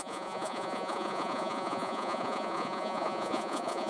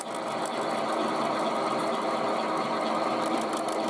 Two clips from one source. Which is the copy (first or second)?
first